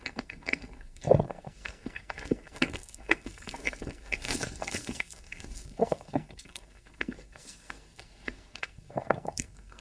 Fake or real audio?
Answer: fake